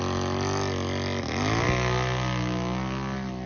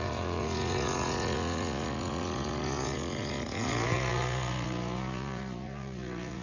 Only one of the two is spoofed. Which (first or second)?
second